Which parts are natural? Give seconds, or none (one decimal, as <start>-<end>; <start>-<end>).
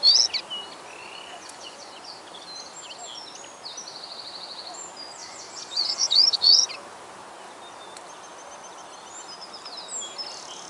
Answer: 0.0-1.0; 2.1-5.2; 6.7-10.7